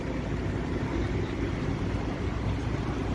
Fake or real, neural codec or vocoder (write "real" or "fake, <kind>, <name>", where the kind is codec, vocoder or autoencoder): real